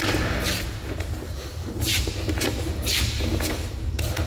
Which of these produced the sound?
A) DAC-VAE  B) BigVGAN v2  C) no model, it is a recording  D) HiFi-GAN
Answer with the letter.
B